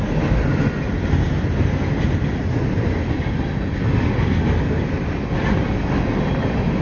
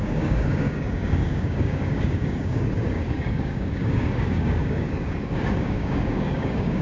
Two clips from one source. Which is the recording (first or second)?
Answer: first